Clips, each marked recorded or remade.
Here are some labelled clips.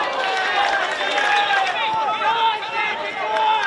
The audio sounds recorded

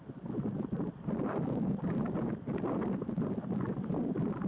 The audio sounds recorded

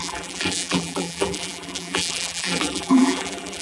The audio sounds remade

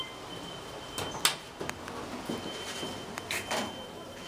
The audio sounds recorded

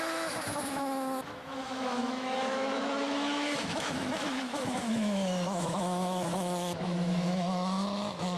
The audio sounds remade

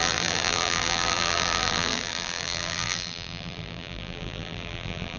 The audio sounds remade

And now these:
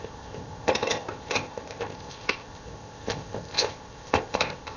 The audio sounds remade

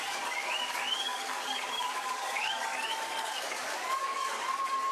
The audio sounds remade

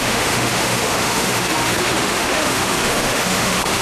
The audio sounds remade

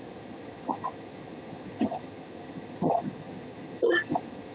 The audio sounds remade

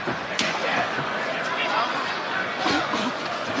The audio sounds remade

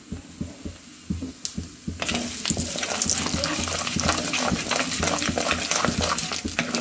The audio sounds recorded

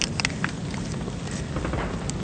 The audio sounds recorded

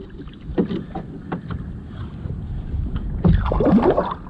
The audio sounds recorded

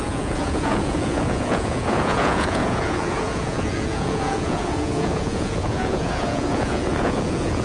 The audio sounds remade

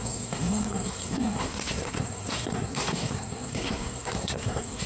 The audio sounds remade